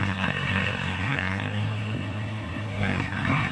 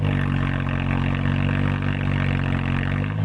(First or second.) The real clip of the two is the second